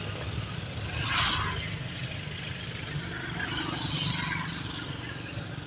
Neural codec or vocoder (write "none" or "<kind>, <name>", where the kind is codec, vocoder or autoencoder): none